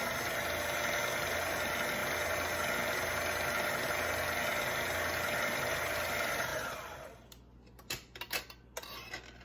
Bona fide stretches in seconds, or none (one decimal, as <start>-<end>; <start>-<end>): 0.0-9.4